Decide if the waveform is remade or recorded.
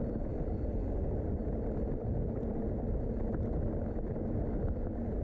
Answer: recorded